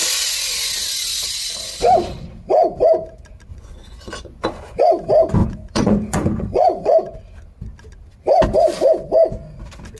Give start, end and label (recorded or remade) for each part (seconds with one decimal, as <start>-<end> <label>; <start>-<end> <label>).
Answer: 0.0-0.7 remade; 0.7-3.5 recorded; 3.5-4.8 remade; 4.8-5.4 recorded; 5.4-7.2 remade; 7.2-10.0 recorded

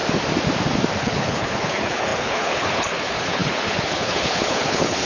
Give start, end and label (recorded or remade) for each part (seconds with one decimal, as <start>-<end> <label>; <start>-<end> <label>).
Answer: 0.0-1.0 recorded; 1.0-5.1 remade

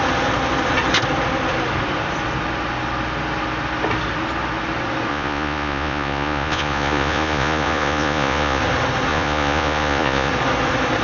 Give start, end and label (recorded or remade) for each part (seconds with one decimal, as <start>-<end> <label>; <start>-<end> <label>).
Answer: 0.0-5.1 recorded; 5.1-8.6 remade; 8.6-9.1 recorded; 9.1-10.3 remade; 10.3-11.0 recorded

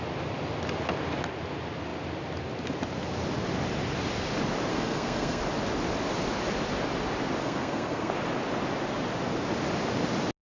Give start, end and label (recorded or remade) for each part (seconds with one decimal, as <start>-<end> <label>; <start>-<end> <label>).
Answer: 0.0-4.7 recorded; 4.7-5.4 remade; 5.4-7.4 recorded; 7.4-8.1 remade; 8.1-10.4 recorded